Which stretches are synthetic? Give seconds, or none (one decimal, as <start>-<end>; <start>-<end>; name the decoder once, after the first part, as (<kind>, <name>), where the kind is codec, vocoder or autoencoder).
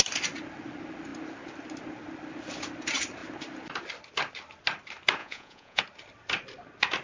5.2-5.8 (vocoder, Vocos)